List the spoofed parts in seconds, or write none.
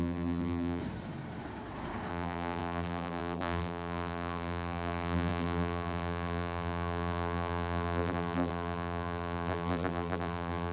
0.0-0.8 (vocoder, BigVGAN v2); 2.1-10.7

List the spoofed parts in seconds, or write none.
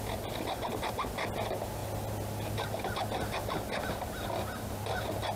none